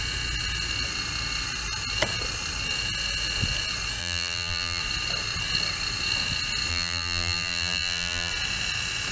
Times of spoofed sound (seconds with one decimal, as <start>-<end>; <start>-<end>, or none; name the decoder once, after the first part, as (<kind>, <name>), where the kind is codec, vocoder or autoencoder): 4.0-4.8 (vocoder, BigVGAN v2); 6.7-8.3

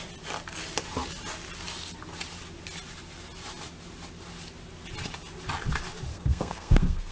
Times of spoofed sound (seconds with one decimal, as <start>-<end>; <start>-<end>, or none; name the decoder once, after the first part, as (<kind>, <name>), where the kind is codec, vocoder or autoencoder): 6.1-7.1 (codec, SNAC)

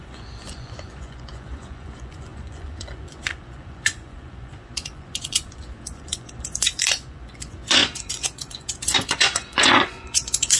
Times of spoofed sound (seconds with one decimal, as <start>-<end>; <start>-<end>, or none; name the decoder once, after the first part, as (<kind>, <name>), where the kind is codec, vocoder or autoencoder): 0.0-10.6 (vocoder, Vocos)

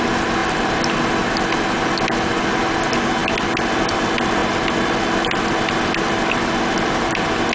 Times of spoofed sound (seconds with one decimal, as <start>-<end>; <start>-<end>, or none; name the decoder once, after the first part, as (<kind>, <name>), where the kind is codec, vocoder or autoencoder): none

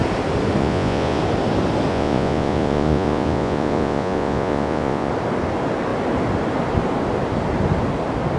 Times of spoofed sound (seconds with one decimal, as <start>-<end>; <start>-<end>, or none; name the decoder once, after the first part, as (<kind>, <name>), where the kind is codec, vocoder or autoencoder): 0.6-1.2 (vocoder, Vocos); 1.9-5.1

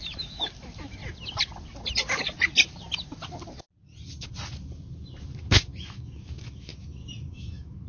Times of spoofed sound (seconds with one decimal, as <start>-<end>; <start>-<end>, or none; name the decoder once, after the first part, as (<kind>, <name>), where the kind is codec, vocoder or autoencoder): 0.0-1.0 (autoencoder, DAC-VAE); 5.5-6.7; 7.3-7.9

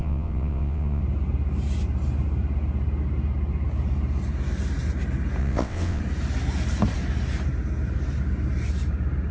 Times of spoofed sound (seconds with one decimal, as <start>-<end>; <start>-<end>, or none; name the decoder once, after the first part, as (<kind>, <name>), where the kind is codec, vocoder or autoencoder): 0.0-1.0 (vocoder, WaveNeXt); 5.4-6.0